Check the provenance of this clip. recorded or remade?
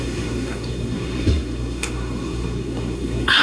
remade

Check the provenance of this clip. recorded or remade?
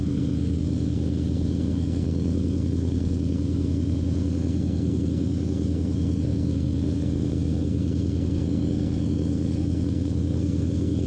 remade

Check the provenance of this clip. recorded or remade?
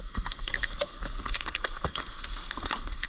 remade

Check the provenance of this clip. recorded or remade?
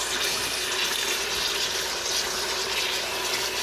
recorded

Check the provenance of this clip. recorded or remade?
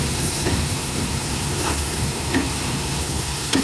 remade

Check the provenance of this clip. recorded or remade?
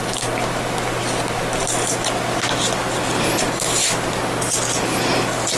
recorded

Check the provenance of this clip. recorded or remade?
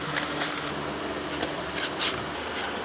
recorded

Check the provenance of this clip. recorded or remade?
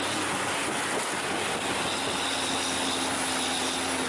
recorded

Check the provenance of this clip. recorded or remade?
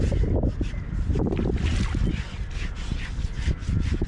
recorded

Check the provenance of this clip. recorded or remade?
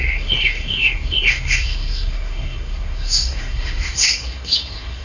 remade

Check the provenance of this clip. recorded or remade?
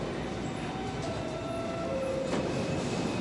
recorded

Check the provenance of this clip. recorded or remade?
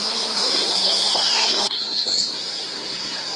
remade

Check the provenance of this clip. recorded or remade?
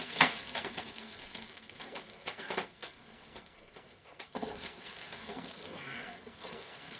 remade